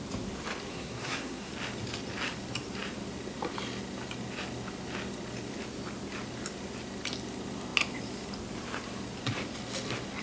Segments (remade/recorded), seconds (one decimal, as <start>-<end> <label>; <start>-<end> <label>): 0.0-0.7 recorded; 0.7-1.5 remade; 1.5-10.2 recorded